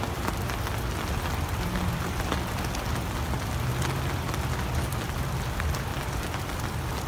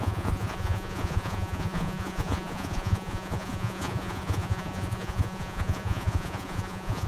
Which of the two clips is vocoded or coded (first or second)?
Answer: second